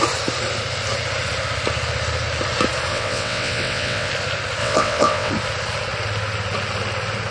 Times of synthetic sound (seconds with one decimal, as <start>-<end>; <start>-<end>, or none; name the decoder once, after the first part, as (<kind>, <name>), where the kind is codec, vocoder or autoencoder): 2.9-4.1 (vocoder, WaveNeXt); 4.6-5.3